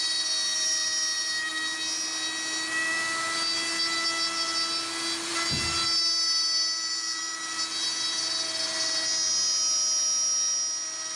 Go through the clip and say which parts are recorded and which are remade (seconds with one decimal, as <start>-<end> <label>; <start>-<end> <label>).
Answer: 0.0-11.2 recorded